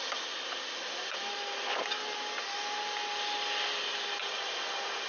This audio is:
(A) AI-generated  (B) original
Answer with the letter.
B